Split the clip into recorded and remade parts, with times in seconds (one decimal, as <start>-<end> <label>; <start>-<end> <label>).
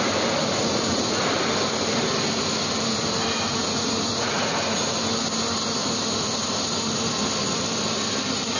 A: 0.0-0.6 recorded; 0.6-1.3 remade; 1.3-3.5 recorded; 3.5-4.9 remade; 4.9-8.6 recorded